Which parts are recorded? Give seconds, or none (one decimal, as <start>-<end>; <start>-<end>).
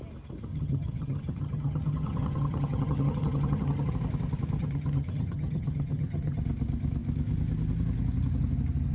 0.0-0.5; 3.9-4.6; 6.4-8.9